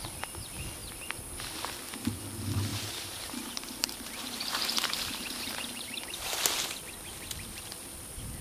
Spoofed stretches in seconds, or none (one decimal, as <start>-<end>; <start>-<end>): 2.7-6.4